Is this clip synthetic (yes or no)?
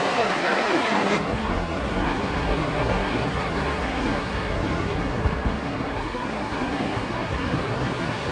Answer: yes